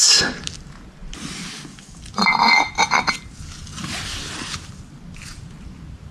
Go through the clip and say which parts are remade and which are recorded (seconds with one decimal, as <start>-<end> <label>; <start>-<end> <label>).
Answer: 0.0-3.7 recorded; 3.7-5.0 remade; 5.0-6.1 recorded